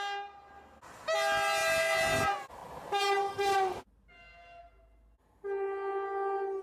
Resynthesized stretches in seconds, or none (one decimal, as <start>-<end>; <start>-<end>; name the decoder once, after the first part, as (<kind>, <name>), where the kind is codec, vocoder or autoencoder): none